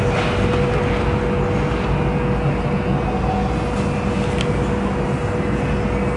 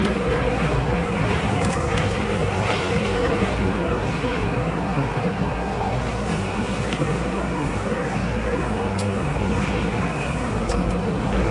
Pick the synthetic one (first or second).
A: second